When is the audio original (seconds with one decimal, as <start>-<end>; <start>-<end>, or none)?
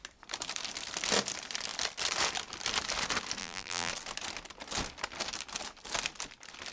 0.0-3.4; 3.9-6.7